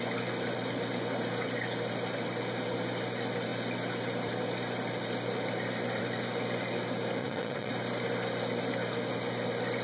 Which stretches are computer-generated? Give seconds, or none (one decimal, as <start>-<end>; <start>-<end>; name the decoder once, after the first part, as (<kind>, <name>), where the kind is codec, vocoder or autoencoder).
7.2-7.7 (vocoder, WaveNeXt)